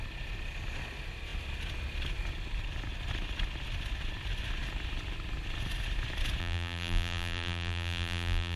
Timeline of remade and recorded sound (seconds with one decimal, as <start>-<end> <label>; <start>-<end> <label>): 0.0-6.4 recorded; 6.4-8.6 remade